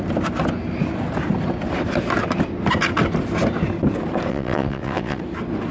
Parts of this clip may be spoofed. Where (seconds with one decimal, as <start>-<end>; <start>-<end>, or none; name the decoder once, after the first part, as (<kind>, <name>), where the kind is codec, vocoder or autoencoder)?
4.3-5.2 (vocoder, WaveNeXt)